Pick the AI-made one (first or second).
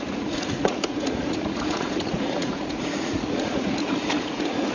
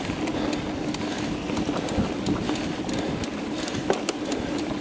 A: first